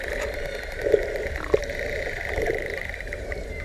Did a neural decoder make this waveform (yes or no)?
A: yes